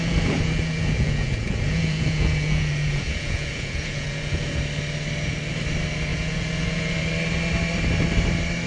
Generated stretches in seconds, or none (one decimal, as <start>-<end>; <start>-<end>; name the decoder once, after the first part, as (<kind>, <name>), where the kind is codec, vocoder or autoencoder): 0.0-4.6 (vocoder, Vocos); 6.1-7.0